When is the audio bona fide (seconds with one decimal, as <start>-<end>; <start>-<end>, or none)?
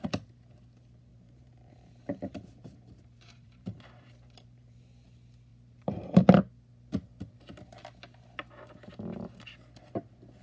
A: 0.0-1.1; 4.8-10.4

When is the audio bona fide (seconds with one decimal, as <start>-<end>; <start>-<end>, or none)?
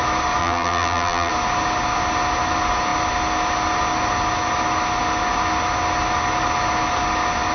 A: 0.0-0.4; 1.3-7.5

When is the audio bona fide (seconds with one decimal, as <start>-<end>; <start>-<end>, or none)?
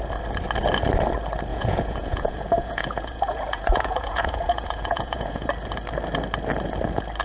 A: 0.0-1.5; 5.5-7.2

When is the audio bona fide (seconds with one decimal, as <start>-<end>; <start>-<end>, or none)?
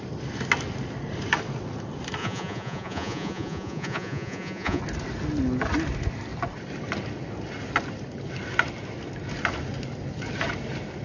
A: 0.0-2.2; 4.8-11.0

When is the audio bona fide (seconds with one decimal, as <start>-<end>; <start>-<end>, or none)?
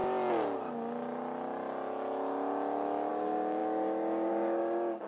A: 0.0-3.1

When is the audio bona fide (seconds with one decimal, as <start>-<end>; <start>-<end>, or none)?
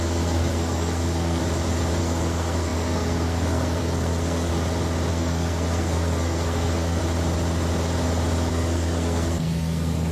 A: 1.4-2.0; 4.5-5.1; 7.0-8.5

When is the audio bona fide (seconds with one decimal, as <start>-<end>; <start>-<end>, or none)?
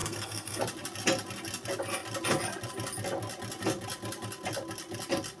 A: 0.6-5.4